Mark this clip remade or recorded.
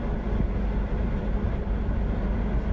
recorded